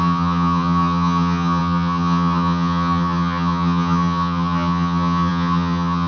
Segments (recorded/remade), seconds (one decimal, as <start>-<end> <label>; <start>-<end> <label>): 0.0-6.1 remade